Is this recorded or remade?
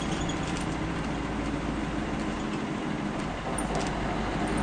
recorded